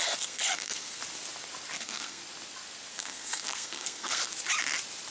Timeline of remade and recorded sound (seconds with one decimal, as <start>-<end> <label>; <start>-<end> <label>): 0.0-1.0 remade; 1.0-1.8 recorded; 1.8-2.2 remade; 2.2-2.9 recorded; 2.9-4.2 remade; 4.2-5.1 recorded